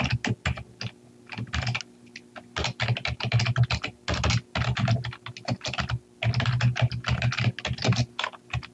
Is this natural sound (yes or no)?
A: yes